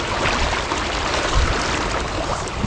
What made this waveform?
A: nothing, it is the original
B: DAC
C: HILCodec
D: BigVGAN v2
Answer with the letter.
A